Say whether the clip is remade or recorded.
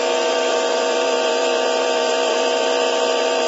remade